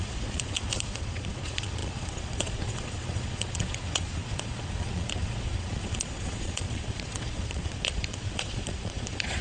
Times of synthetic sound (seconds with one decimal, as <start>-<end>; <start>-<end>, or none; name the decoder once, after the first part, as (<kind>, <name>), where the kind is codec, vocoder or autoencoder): 0.0-9.4 (vocoder, Vocos)

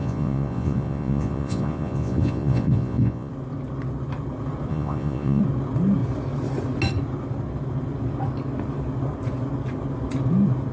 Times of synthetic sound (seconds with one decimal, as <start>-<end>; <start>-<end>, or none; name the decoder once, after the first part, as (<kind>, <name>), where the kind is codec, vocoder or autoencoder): 0.0-3.3 (vocoder, Vocos); 4.7-5.4

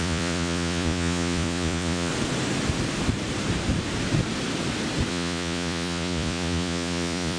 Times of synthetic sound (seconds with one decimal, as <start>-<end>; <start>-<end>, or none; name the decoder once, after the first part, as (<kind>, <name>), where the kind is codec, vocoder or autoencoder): 0.0-2.1 (vocoder, Vocos); 5.1-7.4

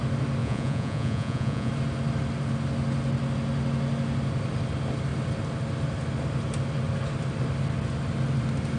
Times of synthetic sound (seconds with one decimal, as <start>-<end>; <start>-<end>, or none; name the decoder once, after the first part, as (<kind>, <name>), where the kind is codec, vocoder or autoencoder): 0.4-1.7 (vocoder, Vocos)

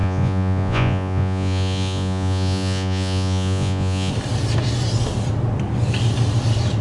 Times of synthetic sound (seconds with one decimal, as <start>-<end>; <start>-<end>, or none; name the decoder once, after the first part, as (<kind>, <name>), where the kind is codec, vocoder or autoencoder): 0.0-4.1 (vocoder, Vocos)

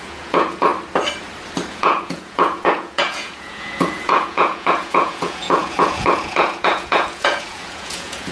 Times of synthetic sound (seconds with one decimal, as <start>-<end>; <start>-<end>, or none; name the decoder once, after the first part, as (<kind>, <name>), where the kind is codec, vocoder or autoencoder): 0.0-0.7 (vocoder, Vocos); 1.7-8.3

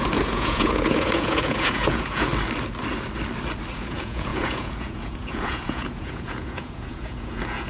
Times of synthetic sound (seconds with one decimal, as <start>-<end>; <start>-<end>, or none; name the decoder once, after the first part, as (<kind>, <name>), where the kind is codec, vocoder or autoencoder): 0.0-2.3 (vocoder, Vocos); 3.7-7.7

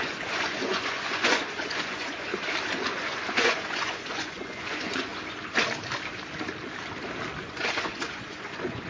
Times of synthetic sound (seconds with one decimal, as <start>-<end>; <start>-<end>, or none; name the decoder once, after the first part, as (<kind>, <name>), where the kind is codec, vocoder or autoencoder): 0.0-2.3 (vocoder, Vocos); 2.9-5.1; 7.4-8.9